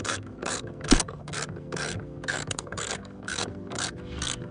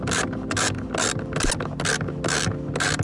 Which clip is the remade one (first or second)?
first